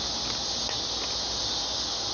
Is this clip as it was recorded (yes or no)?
yes